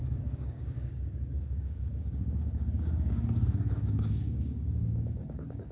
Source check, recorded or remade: remade